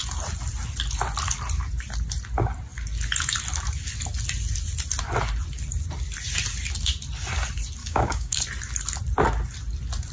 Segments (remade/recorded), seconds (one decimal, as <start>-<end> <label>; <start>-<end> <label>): 0.0-7.8 recorded; 7.8-8.4 remade; 8.4-10.1 recorded